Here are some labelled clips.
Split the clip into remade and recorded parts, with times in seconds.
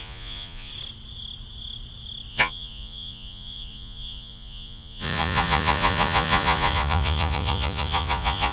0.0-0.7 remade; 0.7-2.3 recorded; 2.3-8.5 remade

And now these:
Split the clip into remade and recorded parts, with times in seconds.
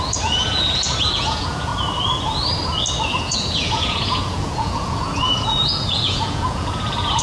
0.0-1.7 remade; 1.7-3.2 recorded; 3.2-7.2 remade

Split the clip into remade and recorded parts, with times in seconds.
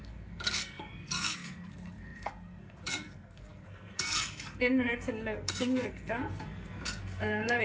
0.0-7.6 remade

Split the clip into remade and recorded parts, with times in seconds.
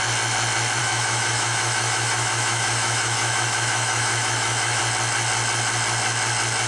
0.0-0.8 recorded; 0.8-4.8 remade; 4.8-6.7 recorded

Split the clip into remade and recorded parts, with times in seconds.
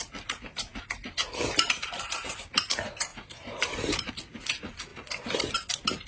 0.0-3.1 recorded; 3.1-4.1 remade; 4.1-6.1 recorded